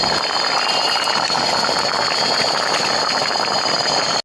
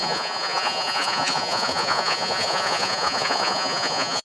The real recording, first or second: first